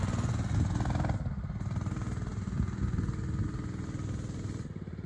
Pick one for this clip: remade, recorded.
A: recorded